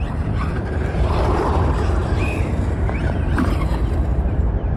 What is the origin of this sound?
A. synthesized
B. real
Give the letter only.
A